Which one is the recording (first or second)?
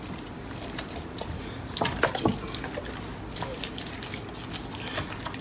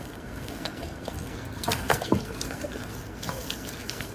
first